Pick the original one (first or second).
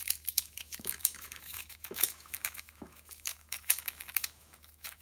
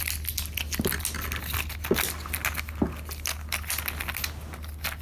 second